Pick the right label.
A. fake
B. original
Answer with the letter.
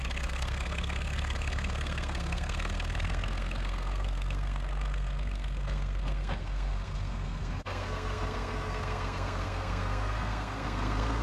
A